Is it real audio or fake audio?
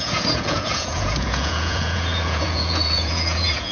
fake